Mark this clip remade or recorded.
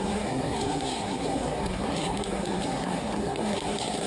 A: remade